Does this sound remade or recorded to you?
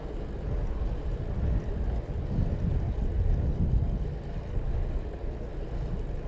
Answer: recorded